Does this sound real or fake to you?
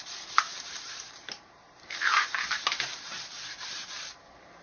fake